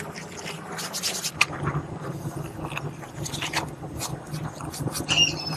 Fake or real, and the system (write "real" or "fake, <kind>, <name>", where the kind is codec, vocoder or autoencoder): real